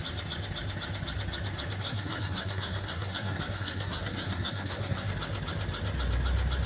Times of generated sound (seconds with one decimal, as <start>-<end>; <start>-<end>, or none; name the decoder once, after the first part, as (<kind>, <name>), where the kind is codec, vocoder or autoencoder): 1.8-5.1 (codec, SNAC)

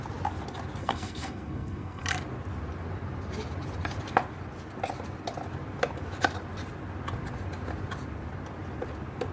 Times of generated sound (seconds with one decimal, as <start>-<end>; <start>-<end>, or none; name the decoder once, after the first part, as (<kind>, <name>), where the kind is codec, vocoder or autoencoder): 0.8-2.2 (codec, SNAC)

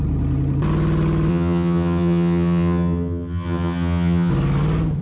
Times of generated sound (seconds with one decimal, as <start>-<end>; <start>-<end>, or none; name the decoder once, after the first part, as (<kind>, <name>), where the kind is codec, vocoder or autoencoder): 1.3-4.3 (vocoder, HiFi-GAN)

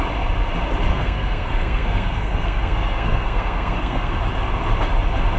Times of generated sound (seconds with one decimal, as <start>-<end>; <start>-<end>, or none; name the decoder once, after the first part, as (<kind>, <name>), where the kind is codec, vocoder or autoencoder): 0.9-4.1 (codec, SNAC)

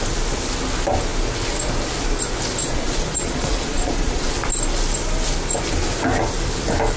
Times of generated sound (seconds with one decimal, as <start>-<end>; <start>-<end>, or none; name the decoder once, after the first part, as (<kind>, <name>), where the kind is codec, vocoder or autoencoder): 2.6-4.5 (vocoder, Vocos)